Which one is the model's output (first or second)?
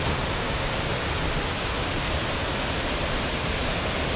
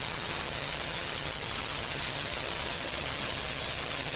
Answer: second